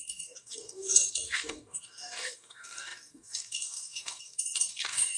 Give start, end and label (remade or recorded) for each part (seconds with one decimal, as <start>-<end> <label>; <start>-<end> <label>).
0.0-5.2 remade